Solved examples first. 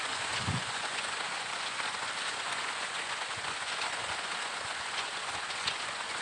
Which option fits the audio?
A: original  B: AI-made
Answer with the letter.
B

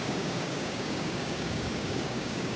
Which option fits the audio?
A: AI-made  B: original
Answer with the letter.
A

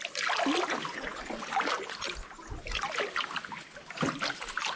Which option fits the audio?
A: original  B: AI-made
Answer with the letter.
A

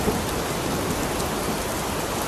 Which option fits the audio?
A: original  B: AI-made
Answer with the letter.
A